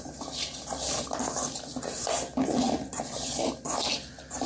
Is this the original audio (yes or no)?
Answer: yes